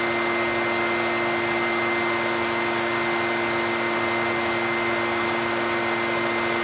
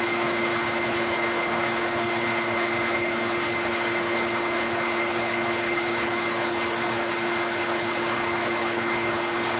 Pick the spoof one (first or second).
second